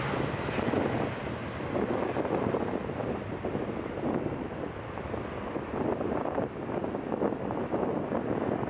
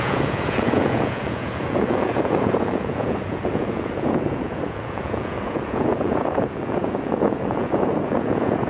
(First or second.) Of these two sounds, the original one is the first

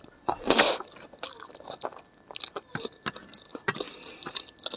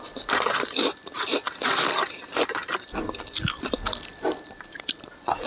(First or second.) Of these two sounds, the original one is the first